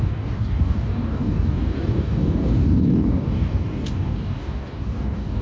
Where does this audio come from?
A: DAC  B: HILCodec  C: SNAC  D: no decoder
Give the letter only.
A